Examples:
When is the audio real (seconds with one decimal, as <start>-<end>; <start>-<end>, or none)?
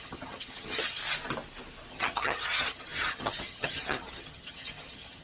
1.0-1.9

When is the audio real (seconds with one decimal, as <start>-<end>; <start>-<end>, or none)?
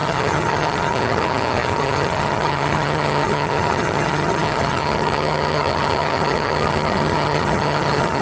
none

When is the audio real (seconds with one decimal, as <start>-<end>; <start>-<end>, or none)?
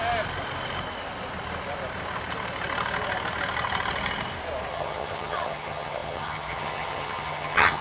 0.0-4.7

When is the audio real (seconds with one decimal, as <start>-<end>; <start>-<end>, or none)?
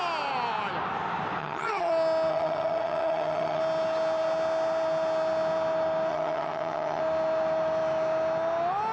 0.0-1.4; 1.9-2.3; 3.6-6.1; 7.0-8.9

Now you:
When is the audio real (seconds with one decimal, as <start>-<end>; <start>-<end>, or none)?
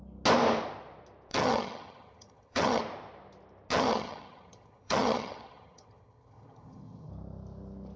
0.0-1.3; 2.8-3.7; 7.1-8.0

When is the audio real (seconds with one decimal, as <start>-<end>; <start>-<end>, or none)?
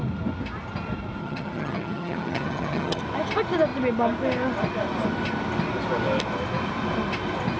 0.0-1.2; 3.0-7.6